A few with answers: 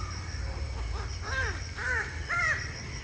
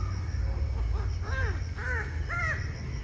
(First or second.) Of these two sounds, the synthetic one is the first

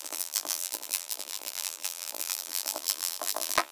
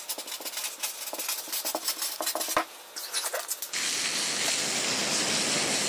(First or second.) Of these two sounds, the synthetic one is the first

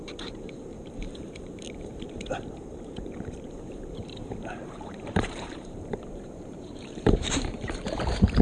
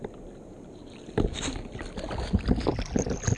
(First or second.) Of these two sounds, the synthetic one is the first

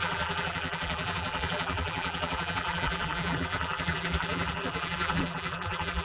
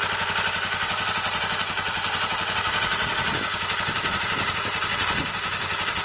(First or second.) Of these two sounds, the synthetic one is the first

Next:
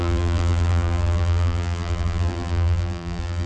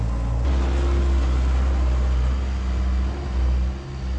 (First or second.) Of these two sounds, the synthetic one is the first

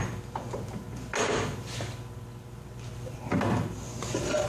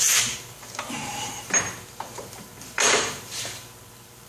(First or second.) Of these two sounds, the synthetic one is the second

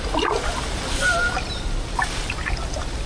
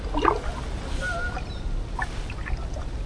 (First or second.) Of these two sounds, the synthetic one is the first